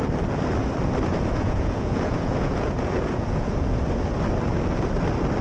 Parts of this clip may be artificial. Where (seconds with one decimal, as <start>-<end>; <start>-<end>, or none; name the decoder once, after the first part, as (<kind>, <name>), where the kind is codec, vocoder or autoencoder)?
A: 1.1-3.8 (vocoder, Vocos)